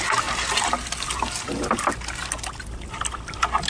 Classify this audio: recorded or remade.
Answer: recorded